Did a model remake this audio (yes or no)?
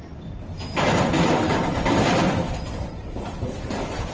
yes